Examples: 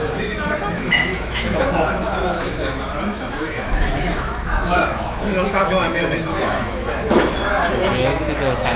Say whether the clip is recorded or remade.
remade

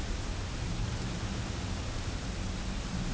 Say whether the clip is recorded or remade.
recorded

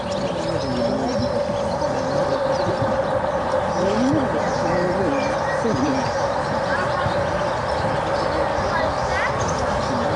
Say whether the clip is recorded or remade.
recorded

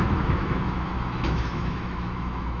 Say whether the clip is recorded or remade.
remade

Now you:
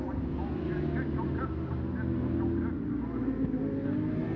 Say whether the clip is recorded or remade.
recorded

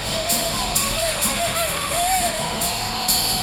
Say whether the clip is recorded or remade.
remade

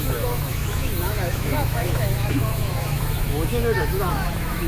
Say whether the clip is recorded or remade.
remade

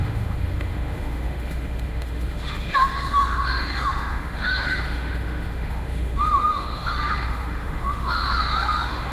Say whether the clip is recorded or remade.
remade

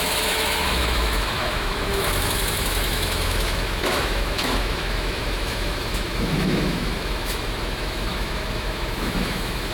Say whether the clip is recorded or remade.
remade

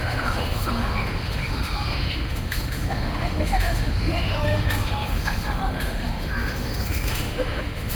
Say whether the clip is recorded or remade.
remade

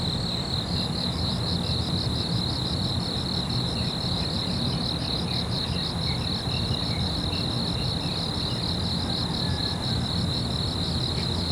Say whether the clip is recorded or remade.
recorded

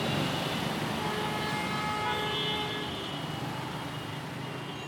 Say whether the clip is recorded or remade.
recorded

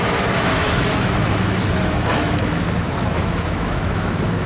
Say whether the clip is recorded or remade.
remade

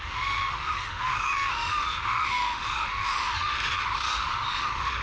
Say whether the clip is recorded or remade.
remade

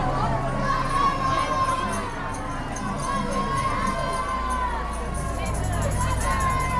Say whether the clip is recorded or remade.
recorded